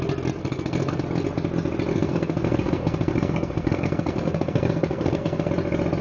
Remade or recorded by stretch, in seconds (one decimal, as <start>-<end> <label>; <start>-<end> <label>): 0.0-0.4 recorded; 0.4-1.0 remade; 1.0-1.9 recorded; 1.9-5.5 remade; 5.5-6.0 recorded